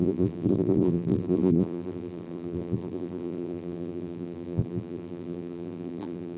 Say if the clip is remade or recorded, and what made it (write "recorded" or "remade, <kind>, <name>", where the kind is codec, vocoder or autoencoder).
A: remade, vocoder, BigVGAN v2